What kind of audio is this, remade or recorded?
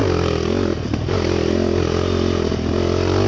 recorded